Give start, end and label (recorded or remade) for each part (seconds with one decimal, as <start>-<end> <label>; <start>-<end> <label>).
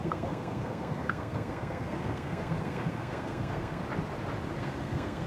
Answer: 0.0-3.8 remade; 3.8-4.6 recorded; 4.6-5.3 remade